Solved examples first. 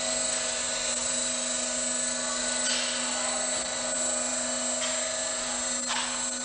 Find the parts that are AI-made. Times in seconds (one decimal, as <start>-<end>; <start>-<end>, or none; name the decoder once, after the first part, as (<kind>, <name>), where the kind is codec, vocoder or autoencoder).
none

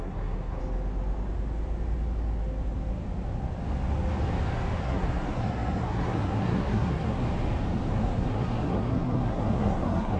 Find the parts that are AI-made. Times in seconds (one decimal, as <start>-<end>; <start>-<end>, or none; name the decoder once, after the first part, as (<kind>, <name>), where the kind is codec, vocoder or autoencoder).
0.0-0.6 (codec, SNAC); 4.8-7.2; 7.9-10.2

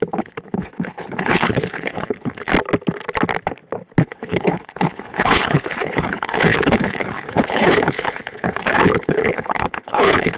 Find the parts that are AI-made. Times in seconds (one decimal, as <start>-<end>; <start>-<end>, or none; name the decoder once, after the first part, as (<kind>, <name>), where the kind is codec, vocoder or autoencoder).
0.0-2.5 (codec, HILCodec); 4.0-10.4